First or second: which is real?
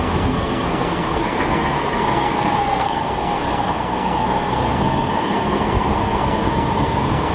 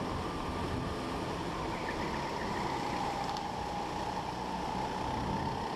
second